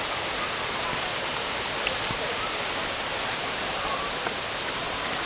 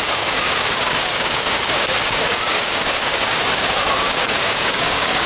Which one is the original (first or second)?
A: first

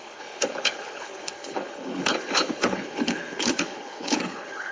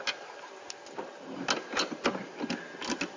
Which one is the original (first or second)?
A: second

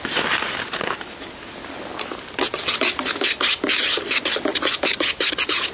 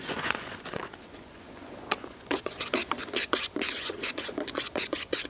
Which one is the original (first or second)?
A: first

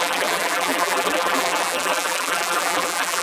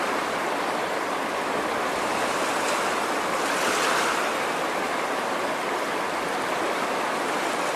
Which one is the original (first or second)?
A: second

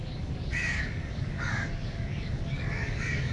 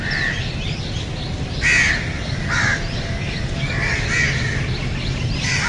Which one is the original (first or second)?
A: second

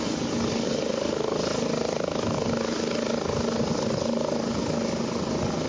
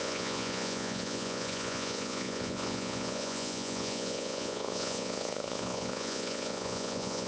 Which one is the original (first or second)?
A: first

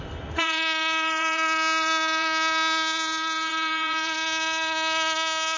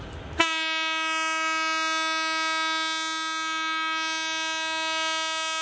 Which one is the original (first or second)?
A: second